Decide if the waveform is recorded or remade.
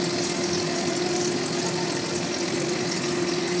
recorded